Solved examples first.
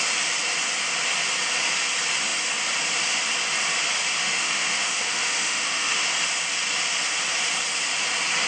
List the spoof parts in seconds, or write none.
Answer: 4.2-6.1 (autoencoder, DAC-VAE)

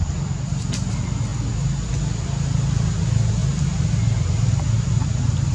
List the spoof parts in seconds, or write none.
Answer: none

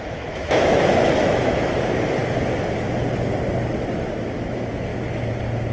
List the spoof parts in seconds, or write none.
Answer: 0.0-2.2 (autoencoder, DAC-VAE); 3.9-4.9